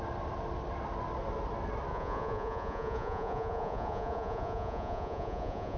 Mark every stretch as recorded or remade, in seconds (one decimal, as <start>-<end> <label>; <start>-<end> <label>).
0.0-1.9 recorded; 1.9-5.8 remade